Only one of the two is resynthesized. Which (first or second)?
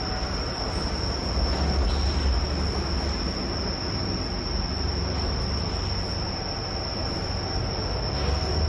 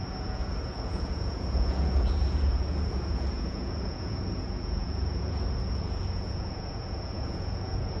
second